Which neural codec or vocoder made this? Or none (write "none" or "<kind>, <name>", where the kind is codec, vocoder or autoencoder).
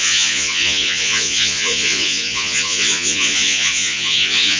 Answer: vocoder, Vocos